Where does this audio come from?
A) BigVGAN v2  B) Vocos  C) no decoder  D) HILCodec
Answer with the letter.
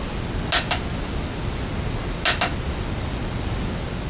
C